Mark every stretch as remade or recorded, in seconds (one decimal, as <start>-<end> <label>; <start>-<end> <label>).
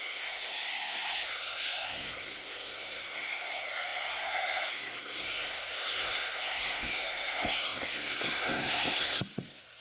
0.0-9.8 remade